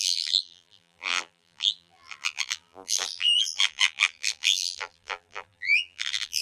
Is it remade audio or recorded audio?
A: remade